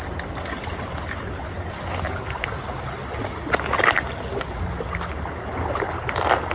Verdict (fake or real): real